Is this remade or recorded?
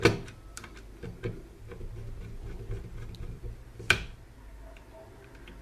recorded